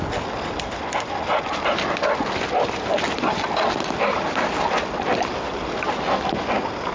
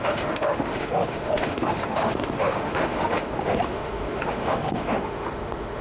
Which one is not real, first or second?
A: second